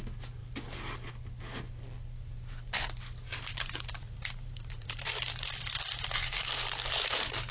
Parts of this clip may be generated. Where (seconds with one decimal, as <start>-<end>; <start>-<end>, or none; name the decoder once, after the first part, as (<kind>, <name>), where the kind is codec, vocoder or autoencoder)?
0.4-1.1 (vocoder, BigVGAN v2); 3.3-7.1